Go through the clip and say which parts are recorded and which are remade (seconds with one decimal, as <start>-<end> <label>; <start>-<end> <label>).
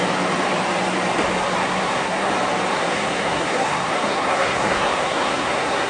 0.0-1.6 recorded; 1.6-2.3 remade; 2.3-2.7 recorded; 2.7-5.9 remade